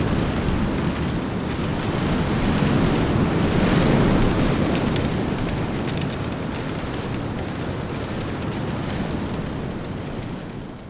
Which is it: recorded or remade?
recorded